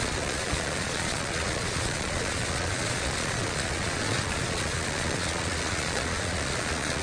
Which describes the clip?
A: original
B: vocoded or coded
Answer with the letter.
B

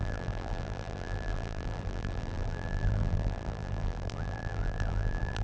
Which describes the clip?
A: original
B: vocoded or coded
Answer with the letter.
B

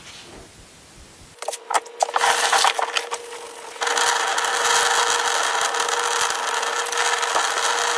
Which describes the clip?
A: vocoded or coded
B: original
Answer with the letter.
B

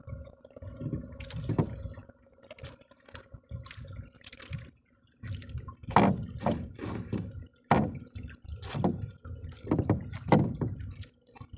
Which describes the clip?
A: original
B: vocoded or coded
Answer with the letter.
A